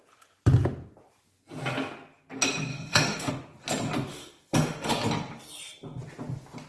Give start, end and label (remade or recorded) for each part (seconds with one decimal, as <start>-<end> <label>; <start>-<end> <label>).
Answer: 0.0-2.7 recorded; 2.7-3.3 remade; 3.3-4.1 recorded; 4.1-4.9 remade; 4.9-6.7 recorded